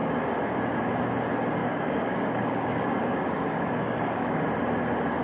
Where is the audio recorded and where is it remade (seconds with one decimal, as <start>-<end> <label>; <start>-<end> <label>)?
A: 0.0-1.6 recorded; 1.6-4.4 remade; 4.4-5.2 recorded